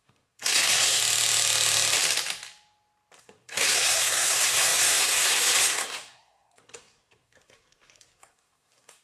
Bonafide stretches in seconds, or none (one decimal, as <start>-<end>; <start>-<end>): 1.0-3.2